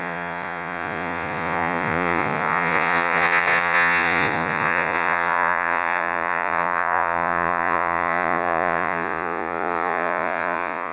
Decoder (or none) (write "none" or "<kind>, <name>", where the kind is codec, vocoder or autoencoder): vocoder, Vocos